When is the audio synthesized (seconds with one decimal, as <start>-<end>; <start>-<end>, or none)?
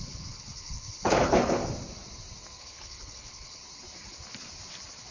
0.0-1.6; 2.6-3.6